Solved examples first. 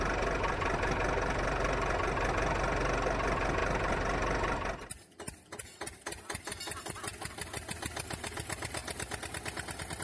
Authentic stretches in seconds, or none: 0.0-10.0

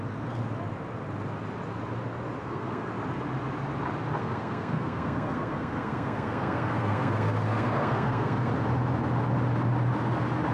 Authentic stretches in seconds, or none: 0.0-2.4; 2.9-4.2; 8.5-10.5

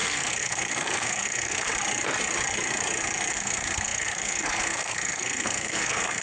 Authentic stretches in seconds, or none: 1.7-3.3